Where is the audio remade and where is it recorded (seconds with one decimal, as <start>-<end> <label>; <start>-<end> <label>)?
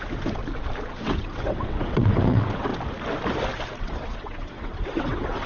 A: 0.0-0.4 remade; 0.4-0.9 recorded; 0.9-2.7 remade; 2.7-3.8 recorded; 3.8-5.5 remade